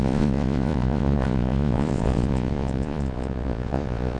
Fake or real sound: fake